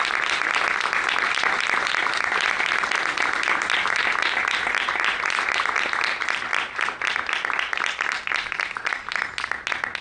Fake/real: real